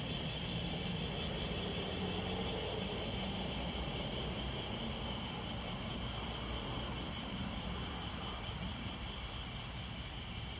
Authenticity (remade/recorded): recorded